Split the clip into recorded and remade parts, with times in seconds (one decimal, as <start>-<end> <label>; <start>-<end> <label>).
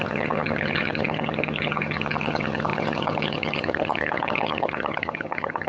0.0-5.7 remade